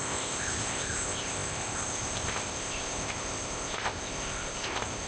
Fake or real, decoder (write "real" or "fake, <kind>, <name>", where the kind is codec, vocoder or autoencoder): fake, codec, ZipCodec